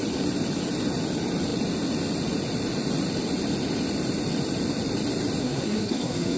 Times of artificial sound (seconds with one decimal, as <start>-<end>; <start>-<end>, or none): 5.4-6.4